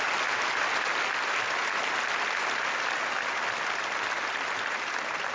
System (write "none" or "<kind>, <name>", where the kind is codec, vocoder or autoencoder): none